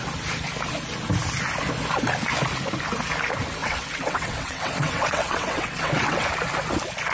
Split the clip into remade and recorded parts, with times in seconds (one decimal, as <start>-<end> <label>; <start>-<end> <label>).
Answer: 0.0-3.6 recorded; 3.6-6.3 remade; 6.3-7.1 recorded